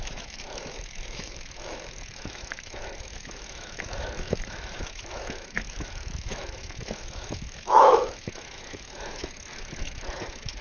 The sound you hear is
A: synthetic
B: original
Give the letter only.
A